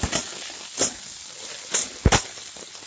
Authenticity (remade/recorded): recorded